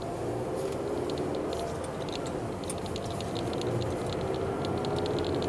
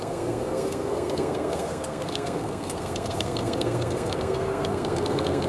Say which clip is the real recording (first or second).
first